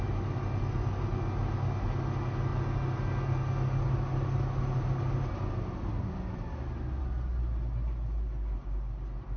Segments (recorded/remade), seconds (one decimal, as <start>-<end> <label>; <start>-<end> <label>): 0.0-9.4 recorded